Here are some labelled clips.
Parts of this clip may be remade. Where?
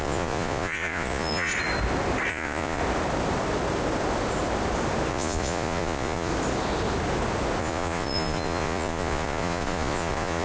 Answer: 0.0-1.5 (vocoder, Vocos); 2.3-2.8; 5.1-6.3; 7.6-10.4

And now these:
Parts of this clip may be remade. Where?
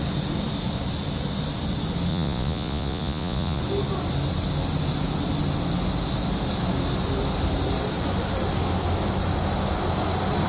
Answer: 2.1-3.6 (vocoder, Vocos)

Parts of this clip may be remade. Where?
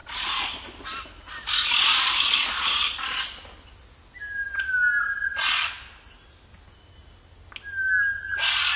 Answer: none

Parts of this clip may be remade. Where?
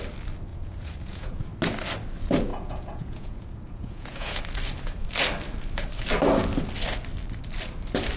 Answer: 0.5-1.5 (vocoder, Vocos); 2.5-4.4